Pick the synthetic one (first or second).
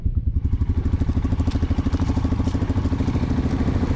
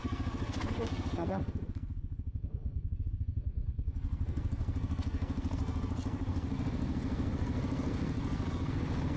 second